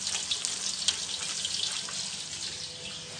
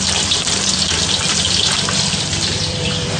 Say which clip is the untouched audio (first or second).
first